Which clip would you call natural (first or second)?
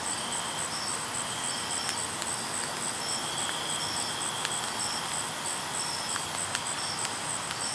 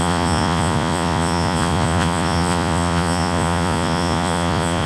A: first